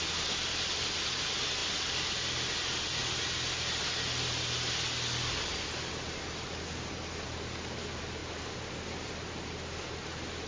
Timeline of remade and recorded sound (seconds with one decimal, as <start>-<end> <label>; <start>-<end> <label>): 0.0-10.5 recorded